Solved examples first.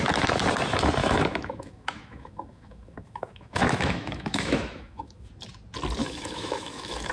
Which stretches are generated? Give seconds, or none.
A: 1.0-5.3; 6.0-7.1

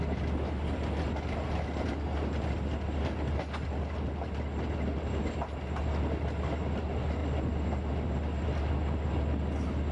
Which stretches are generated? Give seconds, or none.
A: none